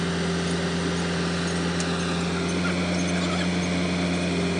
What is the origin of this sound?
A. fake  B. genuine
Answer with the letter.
B